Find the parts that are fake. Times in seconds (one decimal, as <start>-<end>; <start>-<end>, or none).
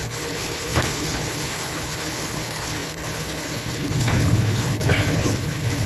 0.0-5.9